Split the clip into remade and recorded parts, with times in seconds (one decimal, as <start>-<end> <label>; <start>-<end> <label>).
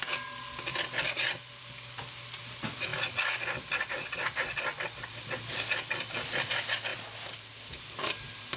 0.0-8.6 recorded